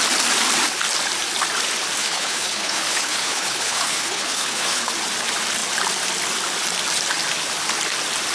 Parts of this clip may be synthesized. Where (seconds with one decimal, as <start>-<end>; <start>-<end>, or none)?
2.0-4.9